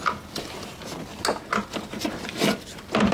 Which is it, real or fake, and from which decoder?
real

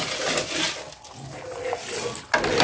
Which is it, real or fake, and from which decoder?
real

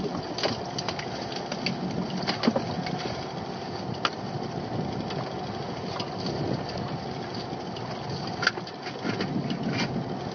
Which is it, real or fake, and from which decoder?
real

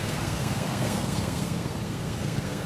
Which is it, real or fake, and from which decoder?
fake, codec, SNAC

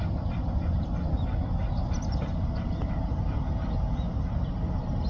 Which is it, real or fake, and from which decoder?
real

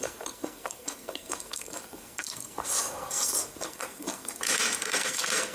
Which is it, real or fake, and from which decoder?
fake, codec, SNAC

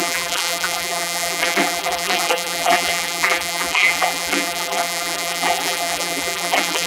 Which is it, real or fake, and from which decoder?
fake, vocoder, BigVGAN v2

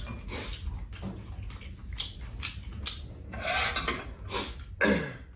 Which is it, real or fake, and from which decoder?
real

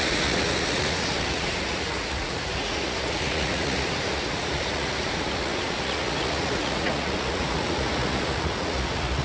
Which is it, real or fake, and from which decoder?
fake, vocoder, Vocos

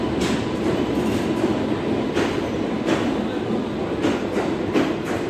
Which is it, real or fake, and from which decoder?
fake, vocoder, BigVGAN v2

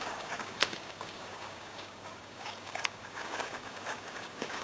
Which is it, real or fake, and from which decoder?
fake, codec, DAC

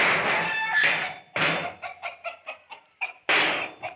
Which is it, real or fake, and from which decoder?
fake, vocoder, BigVGAN v2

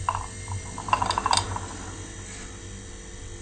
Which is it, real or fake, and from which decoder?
real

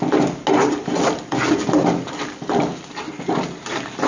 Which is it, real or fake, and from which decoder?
real